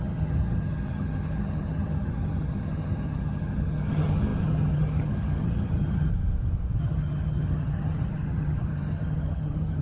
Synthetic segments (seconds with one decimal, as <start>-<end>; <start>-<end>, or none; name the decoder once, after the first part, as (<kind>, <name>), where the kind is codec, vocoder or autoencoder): 0.0-6.1 (vocoder, HiFi-GAN); 6.8-9.8